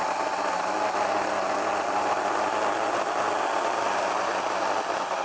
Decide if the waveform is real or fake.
real